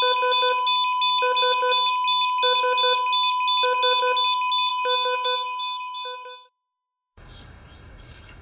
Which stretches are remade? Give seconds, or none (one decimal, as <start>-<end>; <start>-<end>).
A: 4.7-8.4